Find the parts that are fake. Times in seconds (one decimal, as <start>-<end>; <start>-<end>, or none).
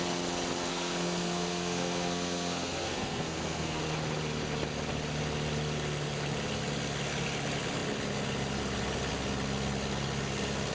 0.7-3.8